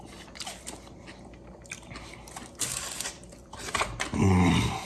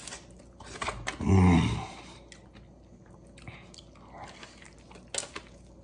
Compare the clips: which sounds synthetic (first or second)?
first